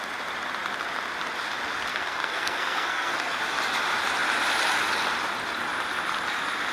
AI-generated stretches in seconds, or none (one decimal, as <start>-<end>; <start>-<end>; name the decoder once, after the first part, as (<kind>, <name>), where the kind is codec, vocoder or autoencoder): 1.9-3.4 (codec, SNAC)